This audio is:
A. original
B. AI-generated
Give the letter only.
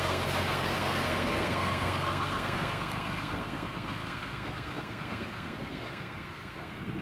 B